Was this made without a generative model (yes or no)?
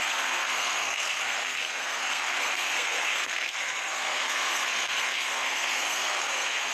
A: no